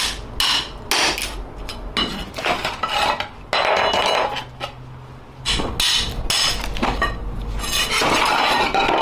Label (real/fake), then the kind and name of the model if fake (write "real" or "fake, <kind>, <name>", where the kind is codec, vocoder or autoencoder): real